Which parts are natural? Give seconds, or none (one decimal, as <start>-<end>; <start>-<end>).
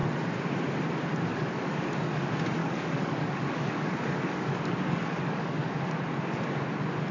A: 0.0-1.3; 2.1-2.6; 5.8-7.1